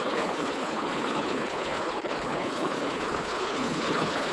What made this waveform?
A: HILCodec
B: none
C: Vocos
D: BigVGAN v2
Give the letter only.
A